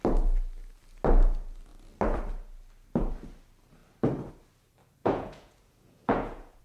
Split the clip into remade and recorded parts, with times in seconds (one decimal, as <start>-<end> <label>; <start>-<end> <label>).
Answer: 0.0-5.0 recorded; 5.0-6.6 remade